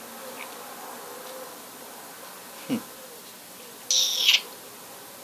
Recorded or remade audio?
recorded